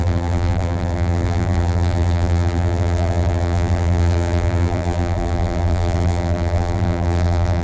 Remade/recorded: remade